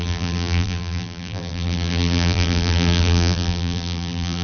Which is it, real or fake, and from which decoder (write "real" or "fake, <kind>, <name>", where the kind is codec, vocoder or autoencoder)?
fake, vocoder, BigVGAN v2